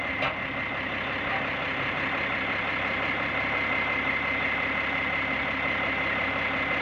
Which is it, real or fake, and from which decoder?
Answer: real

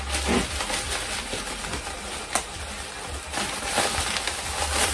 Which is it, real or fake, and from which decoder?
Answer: real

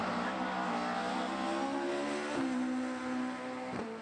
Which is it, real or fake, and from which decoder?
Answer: real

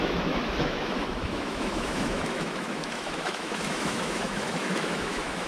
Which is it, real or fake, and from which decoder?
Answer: fake, autoencoder, DAC-VAE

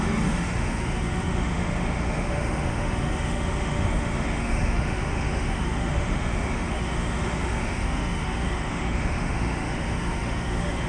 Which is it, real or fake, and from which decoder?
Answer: fake, autoencoder, DAC-VAE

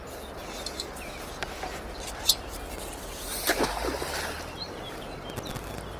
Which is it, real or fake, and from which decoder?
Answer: real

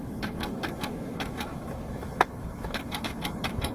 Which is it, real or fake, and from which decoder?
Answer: fake, autoencoder, DAC-VAE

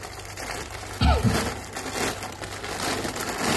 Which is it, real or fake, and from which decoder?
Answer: real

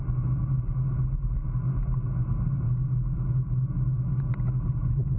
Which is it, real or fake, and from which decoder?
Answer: real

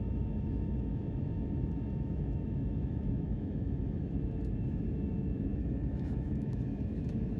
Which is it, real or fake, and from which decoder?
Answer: fake, autoencoder, DAC-VAE